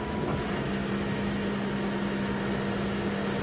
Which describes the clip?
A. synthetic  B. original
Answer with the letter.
B